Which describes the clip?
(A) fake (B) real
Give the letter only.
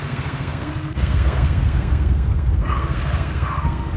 A